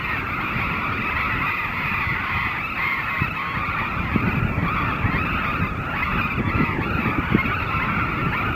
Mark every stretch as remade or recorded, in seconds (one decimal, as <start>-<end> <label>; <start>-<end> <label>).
0.0-8.6 recorded